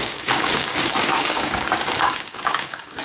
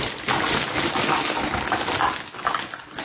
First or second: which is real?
second